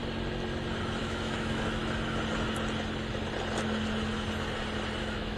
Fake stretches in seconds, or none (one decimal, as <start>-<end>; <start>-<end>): 1.0-1.8; 5.0-5.4